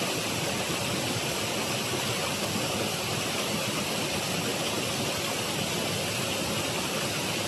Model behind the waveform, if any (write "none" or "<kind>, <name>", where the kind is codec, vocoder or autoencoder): none